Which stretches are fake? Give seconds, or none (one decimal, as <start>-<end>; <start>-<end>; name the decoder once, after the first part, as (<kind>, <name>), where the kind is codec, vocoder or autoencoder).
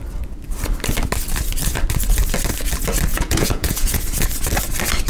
3.1-4.0 (vocoder, Vocos)